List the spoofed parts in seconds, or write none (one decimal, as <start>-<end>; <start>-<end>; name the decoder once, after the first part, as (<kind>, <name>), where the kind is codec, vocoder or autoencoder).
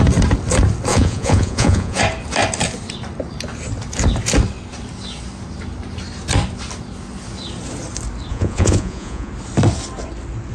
0.9-2.0 (vocoder, Vocos); 8.3-9.3